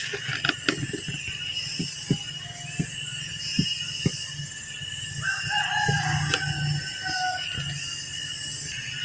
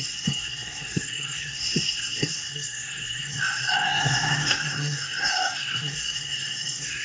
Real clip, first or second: first